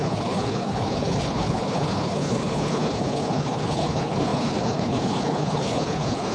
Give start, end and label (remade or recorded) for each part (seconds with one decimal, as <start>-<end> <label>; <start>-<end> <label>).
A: 0.0-6.3 remade